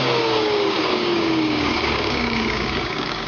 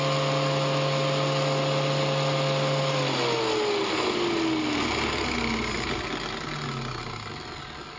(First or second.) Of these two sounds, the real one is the second